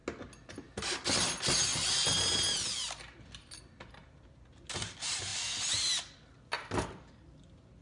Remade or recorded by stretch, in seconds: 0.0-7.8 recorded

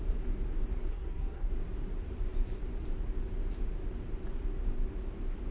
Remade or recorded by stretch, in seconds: 0.0-0.9 recorded; 0.9-1.5 remade; 1.5-5.5 recorded

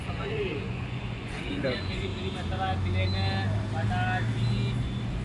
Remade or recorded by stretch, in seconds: 0.0-2.1 remade; 2.1-4.8 recorded; 4.8-5.2 remade